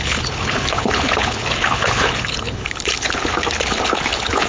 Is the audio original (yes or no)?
no